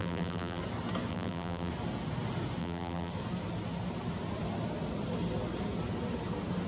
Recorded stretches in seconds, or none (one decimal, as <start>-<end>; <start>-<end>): 0.6-1.1; 1.7-2.6; 3.1-6.7